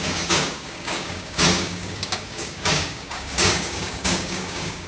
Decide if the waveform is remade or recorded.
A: remade